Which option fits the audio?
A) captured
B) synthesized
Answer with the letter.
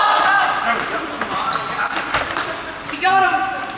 B